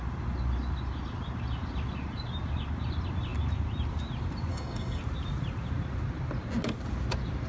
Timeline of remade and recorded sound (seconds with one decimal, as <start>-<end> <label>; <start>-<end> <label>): 0.0-4.5 recorded; 4.5-5.0 remade; 5.0-7.5 recorded